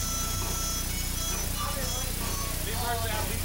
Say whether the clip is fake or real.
real